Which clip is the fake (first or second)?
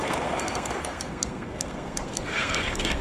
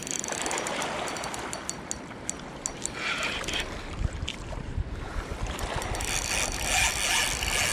first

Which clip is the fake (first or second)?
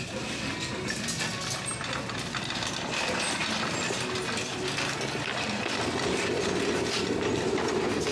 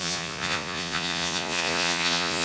second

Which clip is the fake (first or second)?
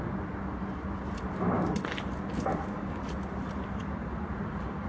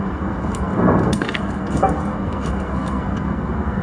second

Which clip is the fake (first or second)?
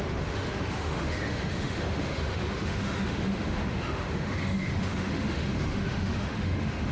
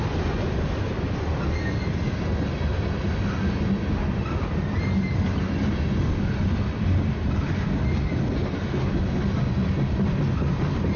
first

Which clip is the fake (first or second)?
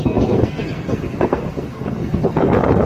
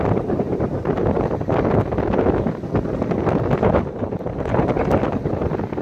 first